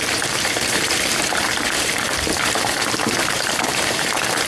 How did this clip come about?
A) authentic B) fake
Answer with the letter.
B